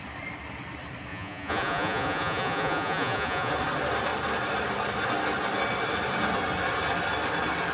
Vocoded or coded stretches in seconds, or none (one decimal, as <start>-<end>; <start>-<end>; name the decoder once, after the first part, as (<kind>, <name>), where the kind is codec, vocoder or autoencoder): 1.1-3.5 (vocoder, Vocos)

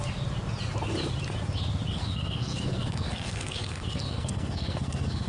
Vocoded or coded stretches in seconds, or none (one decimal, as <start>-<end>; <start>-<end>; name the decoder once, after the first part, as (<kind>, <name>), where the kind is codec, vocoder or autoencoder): 1.9-5.3 (codec, SNAC)